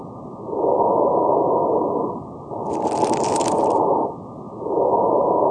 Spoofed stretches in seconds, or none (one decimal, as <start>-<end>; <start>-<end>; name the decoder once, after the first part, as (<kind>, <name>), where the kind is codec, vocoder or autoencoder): none